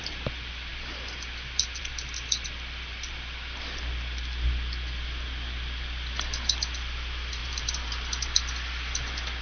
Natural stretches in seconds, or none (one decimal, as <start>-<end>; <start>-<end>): 0.0-7.4; 8.4-9.4